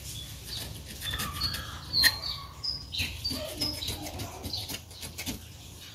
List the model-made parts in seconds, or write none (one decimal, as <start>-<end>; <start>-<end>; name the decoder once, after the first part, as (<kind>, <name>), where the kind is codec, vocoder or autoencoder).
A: none